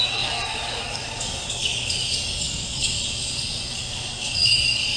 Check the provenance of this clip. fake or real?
fake